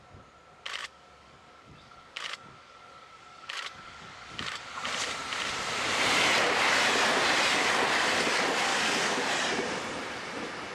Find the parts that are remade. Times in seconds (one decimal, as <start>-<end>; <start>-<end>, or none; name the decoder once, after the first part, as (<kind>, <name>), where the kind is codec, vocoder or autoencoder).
0.8-4.6 (codec, DAC); 8.7-9.3